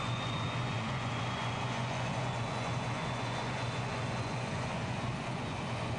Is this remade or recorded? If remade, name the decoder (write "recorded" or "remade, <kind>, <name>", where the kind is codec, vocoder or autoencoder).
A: remade, vocoder, Vocos